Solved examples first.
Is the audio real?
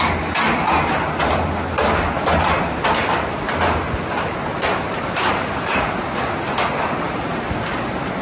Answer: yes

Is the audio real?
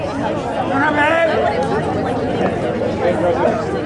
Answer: yes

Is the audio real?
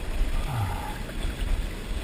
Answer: yes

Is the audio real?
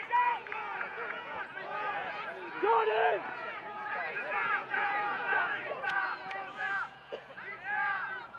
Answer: no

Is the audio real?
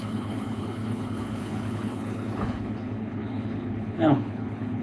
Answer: no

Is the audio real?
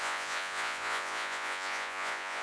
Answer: no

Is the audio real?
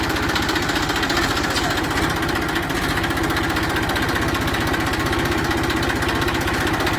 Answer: yes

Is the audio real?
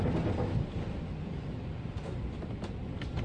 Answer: yes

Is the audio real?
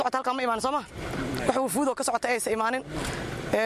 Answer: yes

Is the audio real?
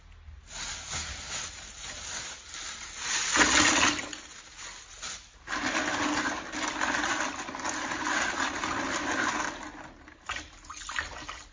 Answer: yes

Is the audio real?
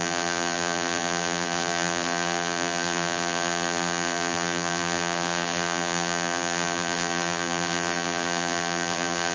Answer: no